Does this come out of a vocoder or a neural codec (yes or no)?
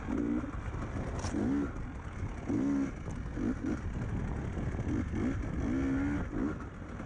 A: no